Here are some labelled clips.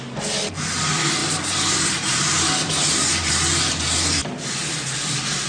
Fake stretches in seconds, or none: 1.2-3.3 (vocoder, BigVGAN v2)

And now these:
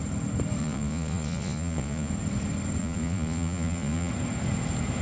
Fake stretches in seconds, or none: 0.6-2.1 (vocoder, Vocos); 2.8-4.1

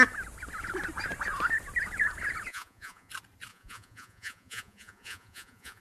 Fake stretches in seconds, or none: 2.5-3.1 (vocoder, Vocos); 3.5-5.8

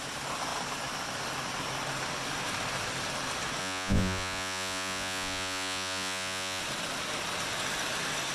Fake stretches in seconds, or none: 3.6-6.6 (vocoder, Vocos)

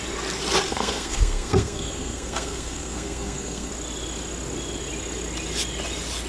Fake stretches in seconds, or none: 0.7-3.7 (codec, SNAC)